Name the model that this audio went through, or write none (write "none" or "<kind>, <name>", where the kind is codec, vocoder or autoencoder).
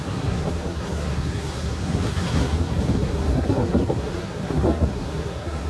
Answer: codec, SNAC